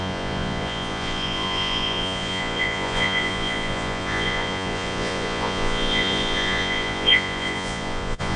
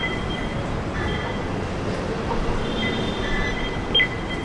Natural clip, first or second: second